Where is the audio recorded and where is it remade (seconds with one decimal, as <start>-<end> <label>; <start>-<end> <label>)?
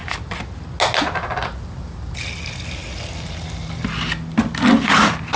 0.0-5.4 recorded